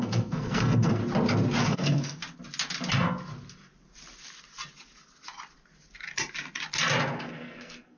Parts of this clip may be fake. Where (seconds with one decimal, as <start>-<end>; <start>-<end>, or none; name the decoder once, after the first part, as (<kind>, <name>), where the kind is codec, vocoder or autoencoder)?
0.0-1.0 (codec, SNAC); 1.6-2.2; 7.0-8.0